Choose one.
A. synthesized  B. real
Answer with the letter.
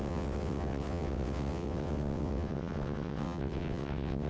A